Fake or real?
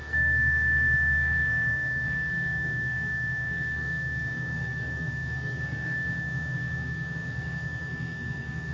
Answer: fake